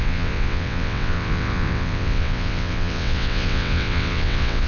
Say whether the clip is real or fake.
fake